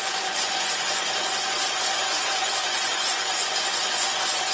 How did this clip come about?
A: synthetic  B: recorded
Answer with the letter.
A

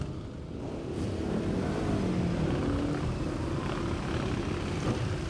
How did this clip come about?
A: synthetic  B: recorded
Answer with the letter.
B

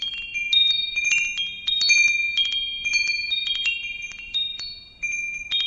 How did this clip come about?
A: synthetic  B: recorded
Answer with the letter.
B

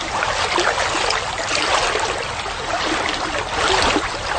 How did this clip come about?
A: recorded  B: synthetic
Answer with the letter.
A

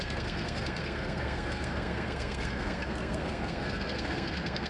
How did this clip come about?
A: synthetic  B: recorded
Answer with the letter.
A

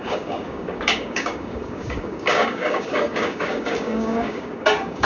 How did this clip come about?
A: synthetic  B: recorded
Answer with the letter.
A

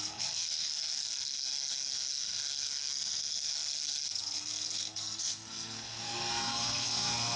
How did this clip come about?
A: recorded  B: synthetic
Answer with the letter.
B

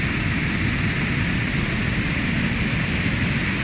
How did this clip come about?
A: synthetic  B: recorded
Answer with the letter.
B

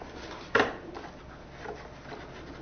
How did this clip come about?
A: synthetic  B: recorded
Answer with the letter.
B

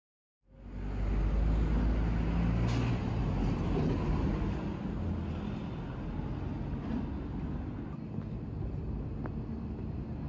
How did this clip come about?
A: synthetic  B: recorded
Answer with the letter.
B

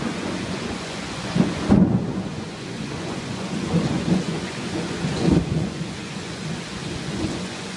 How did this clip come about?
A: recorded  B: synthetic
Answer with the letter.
B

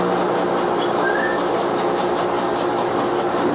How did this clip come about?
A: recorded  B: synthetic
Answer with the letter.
A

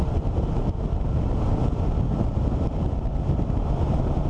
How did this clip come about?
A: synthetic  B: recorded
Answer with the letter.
B